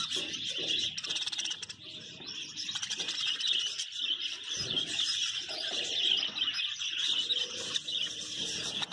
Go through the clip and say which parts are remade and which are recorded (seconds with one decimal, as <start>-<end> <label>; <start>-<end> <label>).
0.0-8.9 recorded